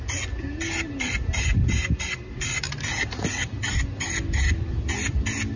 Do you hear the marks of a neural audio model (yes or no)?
no